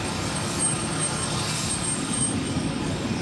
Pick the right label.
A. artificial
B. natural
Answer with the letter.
A